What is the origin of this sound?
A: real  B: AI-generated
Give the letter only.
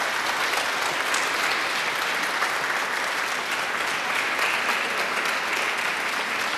A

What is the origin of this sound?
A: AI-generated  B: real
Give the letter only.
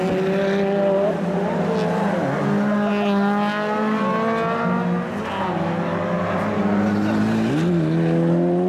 B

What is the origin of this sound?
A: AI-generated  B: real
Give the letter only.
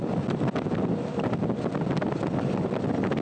B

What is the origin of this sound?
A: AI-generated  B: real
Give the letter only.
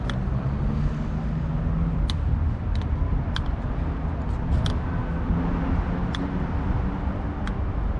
B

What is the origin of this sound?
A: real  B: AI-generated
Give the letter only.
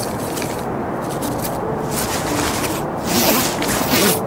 A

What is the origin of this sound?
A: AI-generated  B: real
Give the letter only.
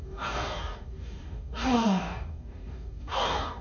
A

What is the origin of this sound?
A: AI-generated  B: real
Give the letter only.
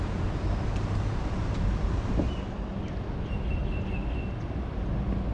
B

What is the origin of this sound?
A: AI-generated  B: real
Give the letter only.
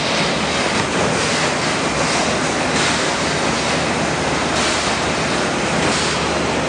B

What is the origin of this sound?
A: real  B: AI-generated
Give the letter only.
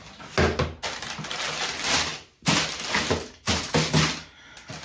A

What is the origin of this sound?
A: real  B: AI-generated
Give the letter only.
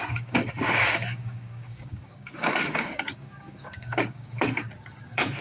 B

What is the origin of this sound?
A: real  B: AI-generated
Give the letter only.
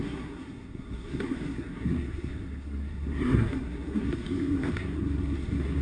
B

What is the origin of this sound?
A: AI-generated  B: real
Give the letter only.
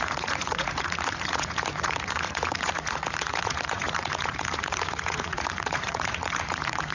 A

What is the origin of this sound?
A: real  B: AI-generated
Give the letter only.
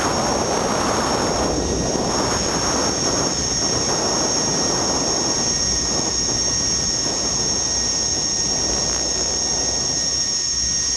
B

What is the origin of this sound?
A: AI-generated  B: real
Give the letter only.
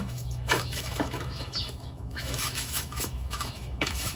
A